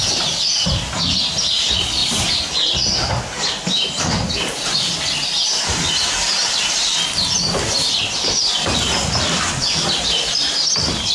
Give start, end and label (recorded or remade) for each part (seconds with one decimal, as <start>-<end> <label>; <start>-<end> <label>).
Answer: 0.0-11.1 recorded